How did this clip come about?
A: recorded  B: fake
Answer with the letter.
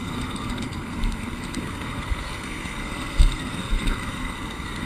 B